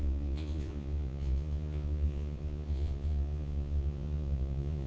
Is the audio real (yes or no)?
no